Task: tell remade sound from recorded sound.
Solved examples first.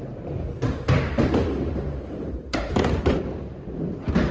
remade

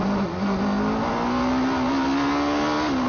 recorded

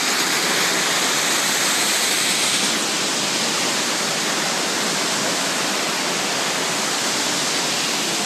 recorded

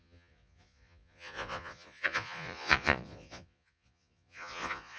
remade